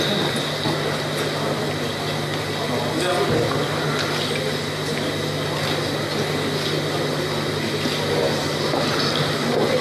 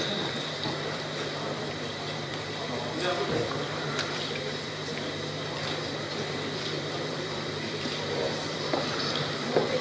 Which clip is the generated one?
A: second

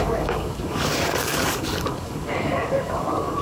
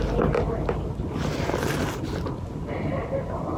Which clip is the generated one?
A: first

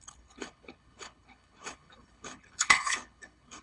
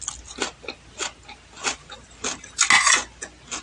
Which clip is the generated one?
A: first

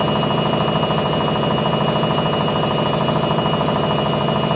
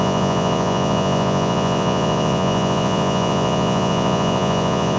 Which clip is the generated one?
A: second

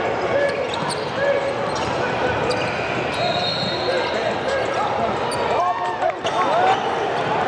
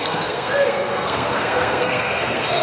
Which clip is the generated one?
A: second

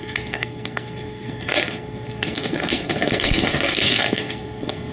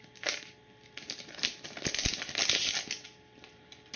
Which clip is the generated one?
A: first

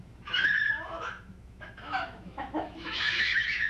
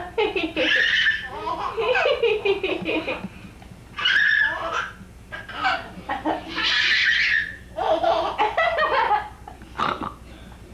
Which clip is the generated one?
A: first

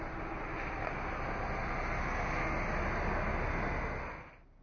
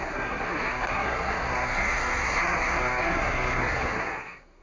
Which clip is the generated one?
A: second